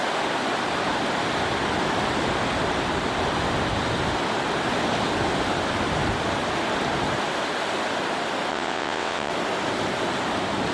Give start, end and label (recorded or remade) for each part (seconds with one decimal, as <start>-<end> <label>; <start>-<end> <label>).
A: 0.0-8.5 recorded; 8.5-9.3 remade; 9.3-10.7 recorded

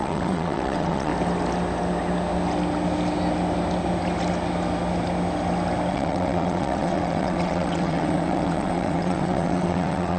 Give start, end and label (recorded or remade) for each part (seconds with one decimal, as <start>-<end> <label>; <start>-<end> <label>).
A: 0.0-1.1 remade; 1.1-5.9 recorded; 5.9-10.2 remade

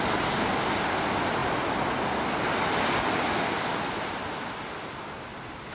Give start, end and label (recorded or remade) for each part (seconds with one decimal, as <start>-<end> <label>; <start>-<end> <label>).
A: 0.0-5.7 recorded